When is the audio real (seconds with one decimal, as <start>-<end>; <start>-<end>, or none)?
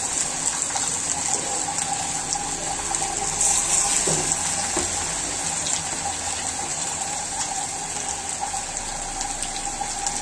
0.0-6.7; 7.6-10.2